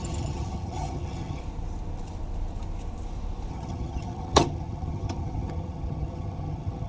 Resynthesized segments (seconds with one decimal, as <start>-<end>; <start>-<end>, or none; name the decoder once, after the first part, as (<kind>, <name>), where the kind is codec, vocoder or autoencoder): 0.0-1.4 (vocoder, HiFi-GAN); 3.5-6.9

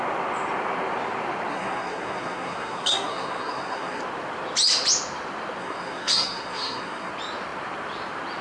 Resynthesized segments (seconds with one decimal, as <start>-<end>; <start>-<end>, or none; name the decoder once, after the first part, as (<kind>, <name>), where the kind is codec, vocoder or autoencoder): 1.5-4.0 (codec, SNAC); 5.6-7.1

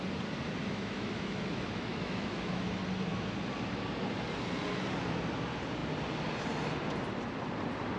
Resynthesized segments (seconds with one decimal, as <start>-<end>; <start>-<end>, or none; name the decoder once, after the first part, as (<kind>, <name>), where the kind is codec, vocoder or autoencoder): 0.6-2.8 (autoencoder, DAC-VAE)

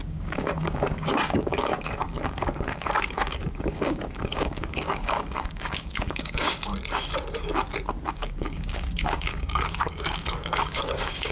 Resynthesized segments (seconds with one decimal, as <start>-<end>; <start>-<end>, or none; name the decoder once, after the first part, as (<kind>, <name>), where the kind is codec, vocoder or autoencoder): 0.0-6.7 (codec, DAC); 8.1-11.3

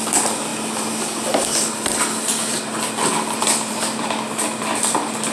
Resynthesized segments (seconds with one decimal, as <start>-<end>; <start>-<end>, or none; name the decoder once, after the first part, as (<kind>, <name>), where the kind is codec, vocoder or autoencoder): none